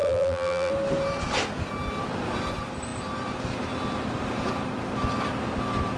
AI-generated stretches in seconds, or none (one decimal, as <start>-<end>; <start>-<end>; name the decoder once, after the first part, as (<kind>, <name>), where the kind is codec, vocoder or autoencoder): 0.0-0.7 (vocoder, BigVGAN v2)